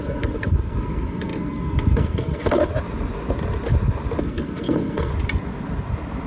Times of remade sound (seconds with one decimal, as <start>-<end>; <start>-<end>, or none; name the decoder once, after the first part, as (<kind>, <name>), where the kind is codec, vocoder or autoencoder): 0.0-2.7 (codec, SNAC); 4.2-5.1

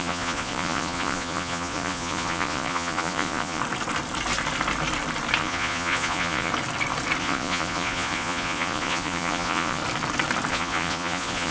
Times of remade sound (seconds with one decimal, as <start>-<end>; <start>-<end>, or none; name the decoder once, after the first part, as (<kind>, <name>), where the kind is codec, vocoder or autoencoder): 0.0-3.6 (vocoder, Vocos); 5.4-6.5; 7.2-9.8; 10.5-11.5

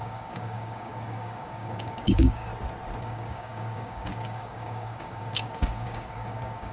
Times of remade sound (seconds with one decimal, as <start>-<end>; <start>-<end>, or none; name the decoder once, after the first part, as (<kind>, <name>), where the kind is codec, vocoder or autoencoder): 0.0-2.5 (codec, DAC); 3.0-6.7